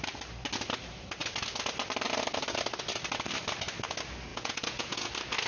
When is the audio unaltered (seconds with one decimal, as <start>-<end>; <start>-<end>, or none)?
0.0-4.3; 5.1-5.5

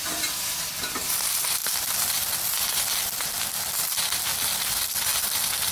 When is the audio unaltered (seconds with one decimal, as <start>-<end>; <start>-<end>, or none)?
0.0-5.7

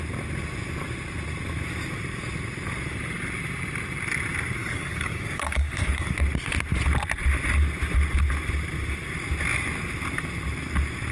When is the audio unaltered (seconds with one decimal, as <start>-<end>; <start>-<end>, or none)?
0.0-4.6; 6.1-11.1

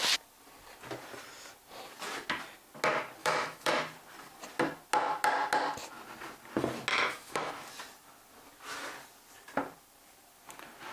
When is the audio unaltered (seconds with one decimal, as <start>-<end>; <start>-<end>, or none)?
0.0-3.2; 3.7-6.9; 7.5-10.9

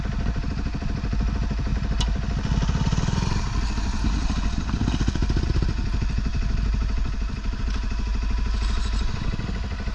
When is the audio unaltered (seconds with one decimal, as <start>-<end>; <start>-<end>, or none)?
0.0-9.9

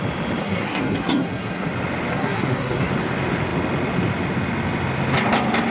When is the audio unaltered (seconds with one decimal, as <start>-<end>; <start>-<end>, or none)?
0.0-0.4; 1.7-2.1; 2.9-5.7

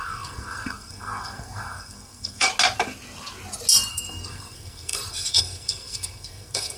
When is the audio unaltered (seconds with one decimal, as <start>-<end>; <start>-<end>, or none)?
2.5-3.9